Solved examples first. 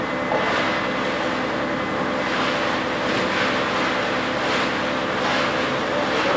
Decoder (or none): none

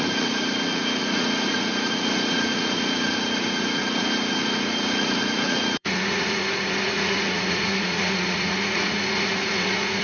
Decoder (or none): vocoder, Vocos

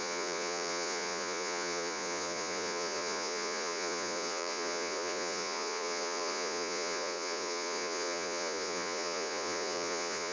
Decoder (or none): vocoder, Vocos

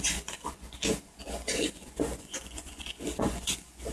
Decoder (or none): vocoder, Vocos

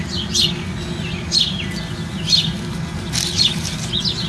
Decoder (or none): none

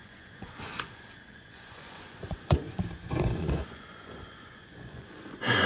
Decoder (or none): vocoder, Vocos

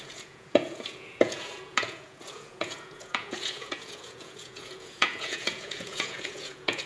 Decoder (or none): vocoder, Vocos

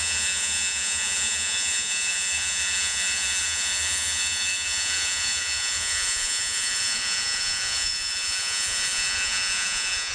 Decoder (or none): vocoder, Vocos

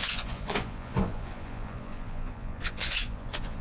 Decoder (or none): vocoder, Vocos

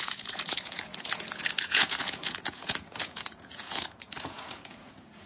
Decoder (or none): vocoder, Vocos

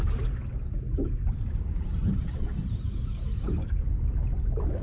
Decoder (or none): none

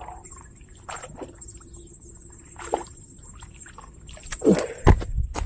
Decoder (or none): none